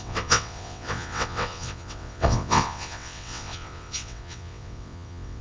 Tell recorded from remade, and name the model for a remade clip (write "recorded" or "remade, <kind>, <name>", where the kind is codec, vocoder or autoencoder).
remade, vocoder, WaveNeXt